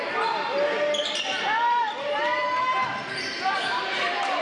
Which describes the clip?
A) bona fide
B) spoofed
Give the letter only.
B